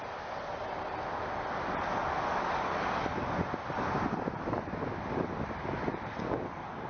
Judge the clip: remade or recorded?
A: recorded